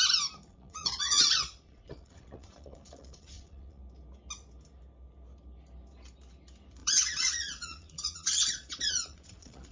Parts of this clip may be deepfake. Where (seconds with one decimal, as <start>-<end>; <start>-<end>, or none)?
0.5-3.8; 6.8-9.7